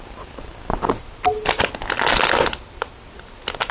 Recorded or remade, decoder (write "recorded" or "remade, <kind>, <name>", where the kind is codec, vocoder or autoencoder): recorded